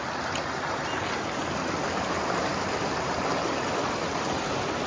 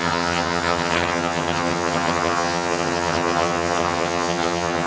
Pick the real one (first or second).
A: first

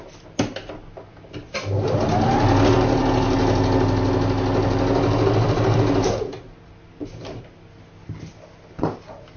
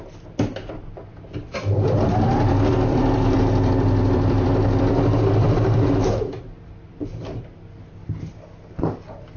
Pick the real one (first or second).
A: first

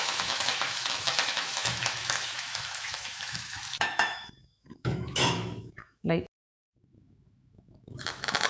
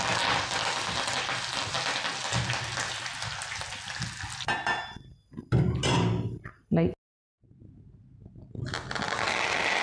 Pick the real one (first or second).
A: second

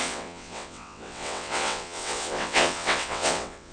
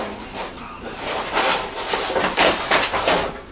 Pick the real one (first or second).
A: second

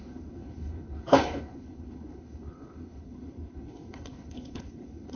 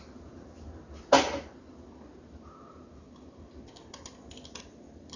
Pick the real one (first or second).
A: second